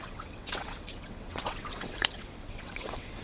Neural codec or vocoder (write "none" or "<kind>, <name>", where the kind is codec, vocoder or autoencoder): vocoder, WaveNeXt